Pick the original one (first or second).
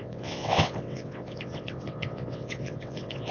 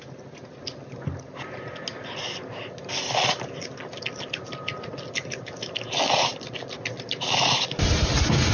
second